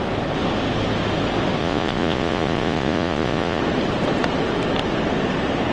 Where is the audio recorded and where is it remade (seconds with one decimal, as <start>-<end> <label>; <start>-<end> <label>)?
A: 0.0-1.6 recorded; 1.6-3.6 remade; 3.6-5.7 recorded